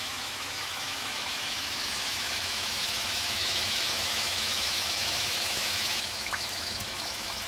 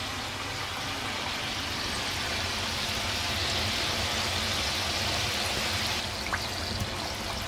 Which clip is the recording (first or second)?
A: second